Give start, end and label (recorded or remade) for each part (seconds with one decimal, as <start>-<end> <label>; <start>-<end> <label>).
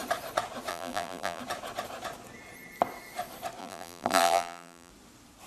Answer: 0.0-0.7 recorded; 0.7-1.4 remade; 1.4-3.6 recorded; 3.6-4.9 remade; 4.9-5.5 recorded